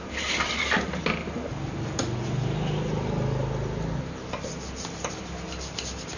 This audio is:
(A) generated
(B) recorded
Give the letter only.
B